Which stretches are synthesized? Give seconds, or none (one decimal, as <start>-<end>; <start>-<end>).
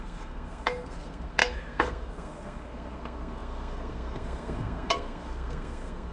0.0-6.1